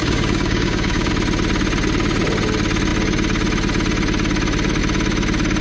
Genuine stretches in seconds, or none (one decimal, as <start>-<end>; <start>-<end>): 1.1-5.6